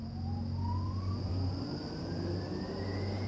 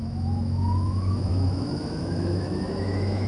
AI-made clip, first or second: second